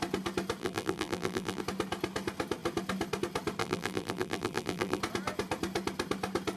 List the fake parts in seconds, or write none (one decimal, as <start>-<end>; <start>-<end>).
0.6-1.6; 3.6-5.0